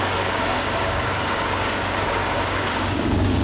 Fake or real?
fake